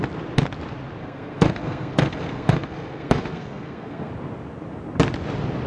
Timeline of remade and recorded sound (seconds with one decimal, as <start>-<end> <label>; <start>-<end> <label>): 0.0-1.0 recorded; 1.0-4.1 remade; 4.1-5.7 recorded

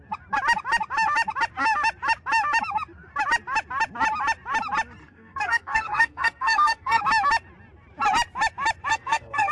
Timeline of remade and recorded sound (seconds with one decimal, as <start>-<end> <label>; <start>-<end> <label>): 0.0-5.0 recorded; 5.0-7.0 remade; 7.0-8.9 recorded; 8.9-9.5 remade